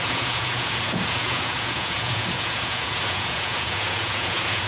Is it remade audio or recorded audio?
remade